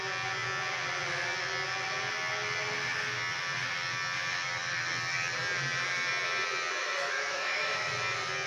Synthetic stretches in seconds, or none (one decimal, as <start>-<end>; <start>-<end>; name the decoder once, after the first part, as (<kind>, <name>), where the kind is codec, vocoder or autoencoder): 6.8-7.9 (autoencoder, DAC-VAE)